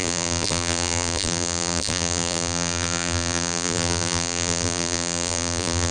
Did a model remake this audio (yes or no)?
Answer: yes